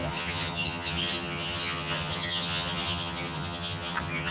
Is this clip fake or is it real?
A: fake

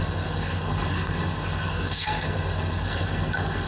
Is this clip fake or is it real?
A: fake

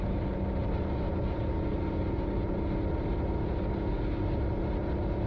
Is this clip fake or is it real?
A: real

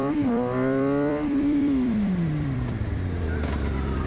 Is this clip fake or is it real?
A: fake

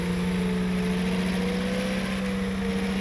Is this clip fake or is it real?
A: real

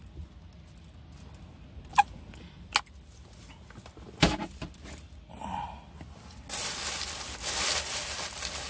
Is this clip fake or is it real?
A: real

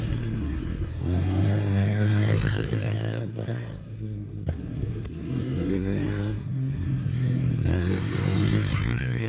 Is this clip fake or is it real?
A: fake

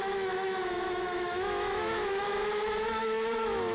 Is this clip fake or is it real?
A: fake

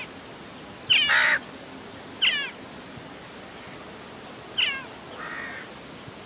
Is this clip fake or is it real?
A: real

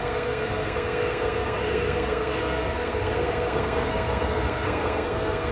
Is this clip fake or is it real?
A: fake